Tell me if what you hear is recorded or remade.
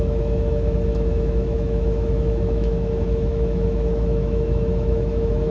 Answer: remade